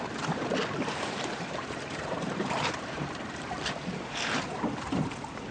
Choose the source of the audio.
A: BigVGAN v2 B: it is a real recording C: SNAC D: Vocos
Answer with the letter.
A